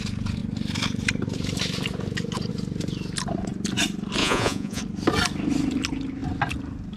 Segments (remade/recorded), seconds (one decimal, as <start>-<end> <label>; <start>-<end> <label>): 0.0-4.2 recorded; 4.2-4.8 remade; 4.8-7.0 recorded

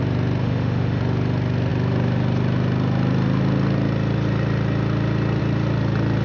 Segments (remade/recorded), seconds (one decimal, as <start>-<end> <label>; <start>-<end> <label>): 0.0-0.4 recorded; 0.4-1.0 remade; 1.0-6.2 recorded